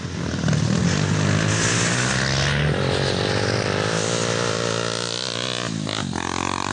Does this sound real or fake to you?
real